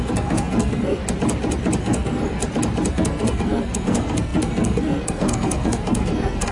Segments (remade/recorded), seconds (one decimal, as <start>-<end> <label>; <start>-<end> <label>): 0.0-1.0 remade; 1.0-1.8 recorded; 1.8-2.4 remade; 2.4-2.9 recorded; 2.9-6.5 remade